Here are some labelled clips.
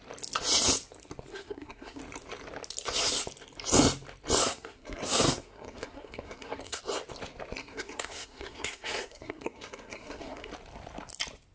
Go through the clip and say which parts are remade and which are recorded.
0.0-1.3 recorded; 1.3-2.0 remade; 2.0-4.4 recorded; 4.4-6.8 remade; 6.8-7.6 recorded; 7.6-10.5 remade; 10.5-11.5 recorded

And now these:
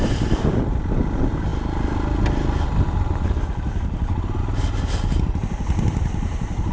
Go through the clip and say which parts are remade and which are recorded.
0.0-6.7 recorded

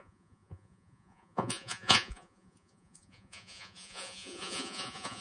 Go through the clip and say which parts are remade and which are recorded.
0.0-5.2 remade

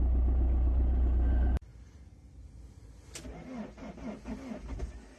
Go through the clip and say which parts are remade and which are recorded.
0.0-5.2 recorded

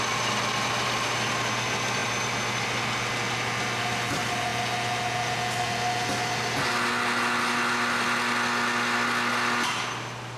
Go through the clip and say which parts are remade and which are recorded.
0.0-10.4 recorded